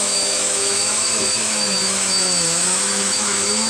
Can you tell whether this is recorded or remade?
remade